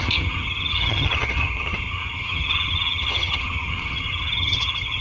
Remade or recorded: remade